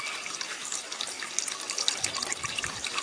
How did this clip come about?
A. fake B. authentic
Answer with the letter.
B